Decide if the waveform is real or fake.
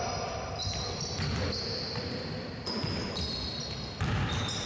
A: real